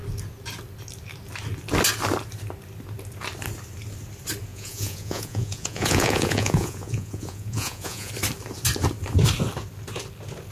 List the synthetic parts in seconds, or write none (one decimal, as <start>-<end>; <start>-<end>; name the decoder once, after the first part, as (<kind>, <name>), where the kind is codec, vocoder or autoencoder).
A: 4.5-8.1 (vocoder, Vocos)